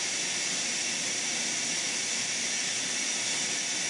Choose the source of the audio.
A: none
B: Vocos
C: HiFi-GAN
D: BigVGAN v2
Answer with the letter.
A